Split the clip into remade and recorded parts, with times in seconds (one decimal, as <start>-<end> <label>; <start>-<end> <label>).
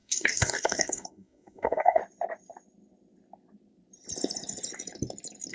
0.0-2.0 remade; 2.0-5.5 recorded